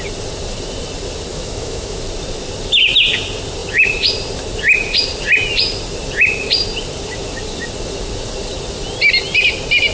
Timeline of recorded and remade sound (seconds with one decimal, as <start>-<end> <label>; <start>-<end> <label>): 0.0-1.3 recorded; 1.3-2.0 remade; 2.0-9.9 recorded